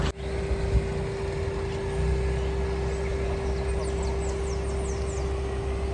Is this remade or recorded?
recorded